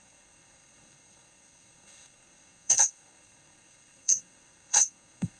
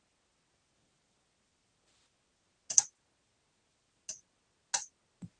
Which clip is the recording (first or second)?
second